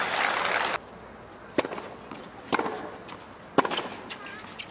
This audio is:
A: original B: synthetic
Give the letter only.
A